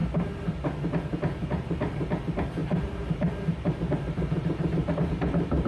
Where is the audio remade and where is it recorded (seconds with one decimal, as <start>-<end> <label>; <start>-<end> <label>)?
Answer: 0.0-2.6 recorded; 2.6-5.7 remade